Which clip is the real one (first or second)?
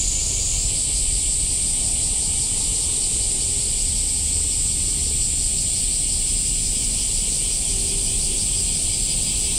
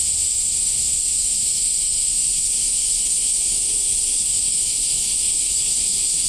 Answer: first